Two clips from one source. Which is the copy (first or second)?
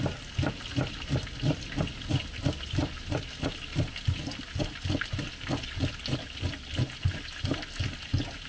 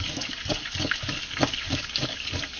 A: second